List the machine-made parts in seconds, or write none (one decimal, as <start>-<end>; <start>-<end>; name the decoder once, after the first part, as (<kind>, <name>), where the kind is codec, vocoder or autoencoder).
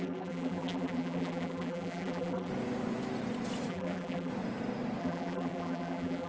0.0-2.5 (vocoder, BigVGAN v2); 3.7-4.3; 5.0-6.3